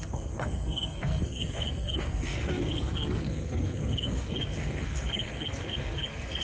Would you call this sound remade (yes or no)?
yes